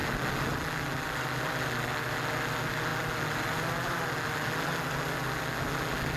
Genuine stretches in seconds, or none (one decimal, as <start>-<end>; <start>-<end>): 0.0-6.2